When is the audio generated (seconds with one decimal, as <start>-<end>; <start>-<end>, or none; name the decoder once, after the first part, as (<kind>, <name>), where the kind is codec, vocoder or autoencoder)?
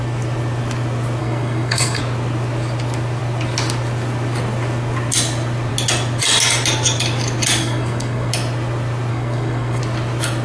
1.2-2.0 (codec, SNAC); 7.6-8.3; 9.1-9.8